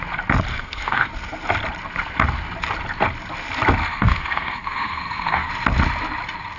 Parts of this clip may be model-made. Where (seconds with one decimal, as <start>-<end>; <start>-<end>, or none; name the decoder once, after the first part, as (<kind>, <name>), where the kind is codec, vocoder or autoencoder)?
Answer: 0.5-1.1 (codec, SNAC); 3.8-5.5